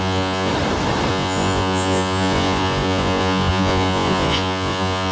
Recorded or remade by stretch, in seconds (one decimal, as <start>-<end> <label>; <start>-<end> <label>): 0.0-0.5 remade; 0.5-1.1 recorded; 1.1-5.1 remade